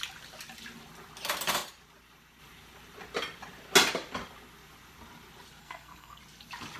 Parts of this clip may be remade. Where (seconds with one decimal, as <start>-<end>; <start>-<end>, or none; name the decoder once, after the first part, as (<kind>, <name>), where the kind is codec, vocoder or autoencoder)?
5.6-6.2 (codec, SNAC)